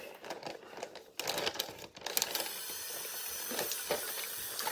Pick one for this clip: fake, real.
real